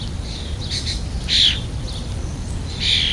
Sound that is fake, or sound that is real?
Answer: real